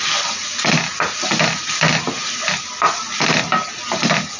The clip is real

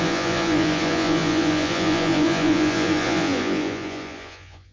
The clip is fake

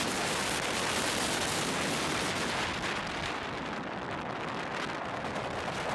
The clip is real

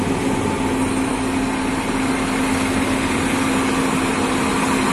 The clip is real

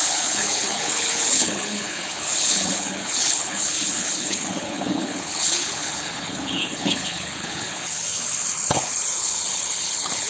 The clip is fake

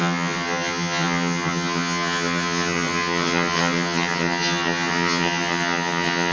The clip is fake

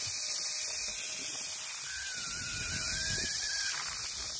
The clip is real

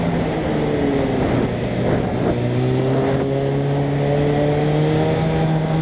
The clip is real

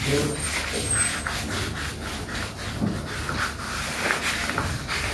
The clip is real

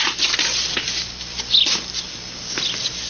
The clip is real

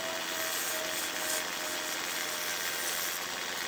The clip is real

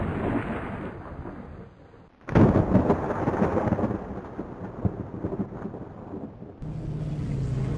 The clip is real